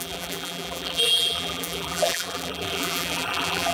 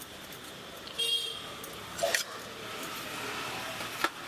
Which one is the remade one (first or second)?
first